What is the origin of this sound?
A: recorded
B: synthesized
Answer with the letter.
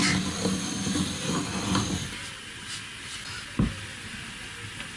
A